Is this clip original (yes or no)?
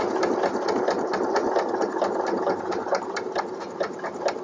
yes